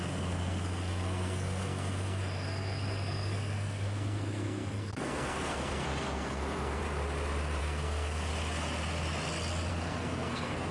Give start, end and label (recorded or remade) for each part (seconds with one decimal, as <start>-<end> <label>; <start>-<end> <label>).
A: 0.0-6.8 remade; 6.8-7.6 recorded; 7.6-8.3 remade; 8.3-9.7 recorded; 9.7-10.7 remade